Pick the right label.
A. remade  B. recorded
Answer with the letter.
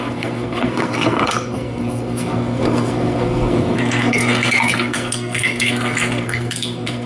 A